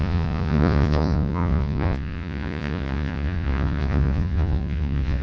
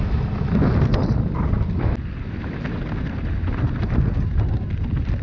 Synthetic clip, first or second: first